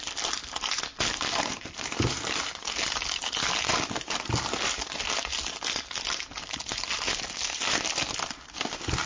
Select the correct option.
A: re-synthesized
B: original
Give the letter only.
B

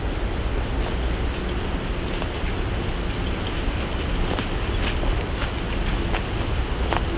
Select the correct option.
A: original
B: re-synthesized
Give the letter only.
A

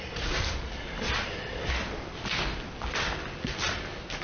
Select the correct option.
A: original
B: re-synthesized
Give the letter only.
A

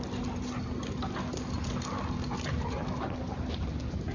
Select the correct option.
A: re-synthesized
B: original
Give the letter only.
B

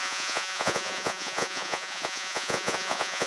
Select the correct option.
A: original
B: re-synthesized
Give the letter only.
B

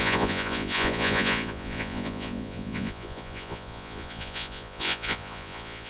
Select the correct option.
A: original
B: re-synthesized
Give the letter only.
B